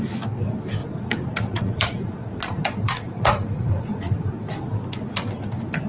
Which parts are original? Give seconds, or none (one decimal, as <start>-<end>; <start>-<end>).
0.0-0.8; 4.3-5.9